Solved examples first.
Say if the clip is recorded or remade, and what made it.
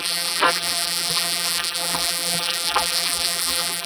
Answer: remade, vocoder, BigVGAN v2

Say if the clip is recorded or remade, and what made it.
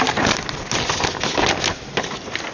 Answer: recorded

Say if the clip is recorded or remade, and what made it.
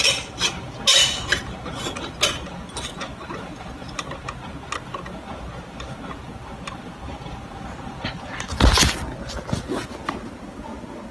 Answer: recorded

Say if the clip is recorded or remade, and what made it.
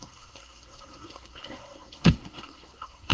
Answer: remade, codec, SNAC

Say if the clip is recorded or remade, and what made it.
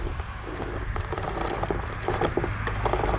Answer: recorded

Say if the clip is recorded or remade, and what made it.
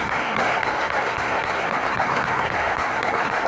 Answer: remade, codec, SNAC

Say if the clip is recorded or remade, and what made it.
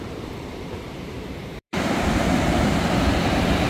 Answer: remade, vocoder, BigVGAN v2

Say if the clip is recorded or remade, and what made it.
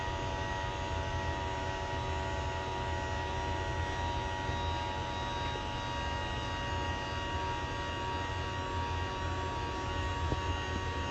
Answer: recorded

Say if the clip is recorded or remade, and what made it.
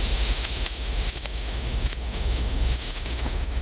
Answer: remade, autoencoder, DAC-VAE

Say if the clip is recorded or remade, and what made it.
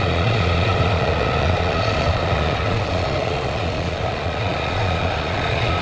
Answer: remade, vocoder, Vocos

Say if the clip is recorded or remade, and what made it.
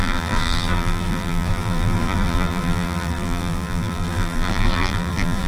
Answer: remade, vocoder, BigVGAN v2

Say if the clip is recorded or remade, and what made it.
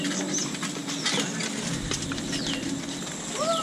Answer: recorded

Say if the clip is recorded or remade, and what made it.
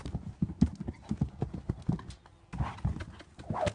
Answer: recorded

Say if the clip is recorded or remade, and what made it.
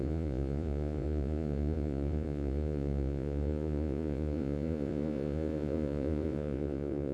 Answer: remade, vocoder, Vocos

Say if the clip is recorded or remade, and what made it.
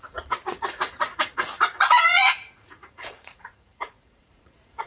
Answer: remade, vocoder, Vocos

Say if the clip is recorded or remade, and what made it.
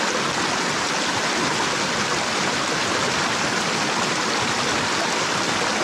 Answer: recorded